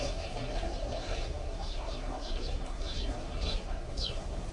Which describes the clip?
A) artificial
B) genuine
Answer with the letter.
A